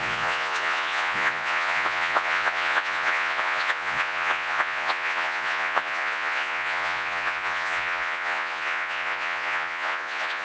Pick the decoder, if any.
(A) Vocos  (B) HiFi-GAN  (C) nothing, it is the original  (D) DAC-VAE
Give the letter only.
A